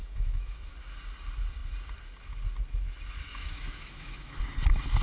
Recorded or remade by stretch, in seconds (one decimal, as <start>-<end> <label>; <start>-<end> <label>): 0.0-0.7 remade; 0.7-3.3 recorded; 3.3-4.4 remade; 4.4-5.0 recorded